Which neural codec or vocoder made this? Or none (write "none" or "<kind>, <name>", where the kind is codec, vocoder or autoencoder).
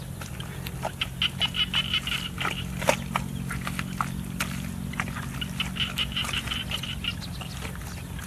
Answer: none